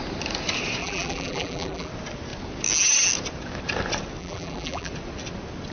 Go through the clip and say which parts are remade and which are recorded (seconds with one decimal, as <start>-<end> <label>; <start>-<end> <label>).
0.0-0.8 recorded; 0.8-1.9 remade; 1.9-4.2 recorded; 4.2-4.9 remade; 4.9-5.7 recorded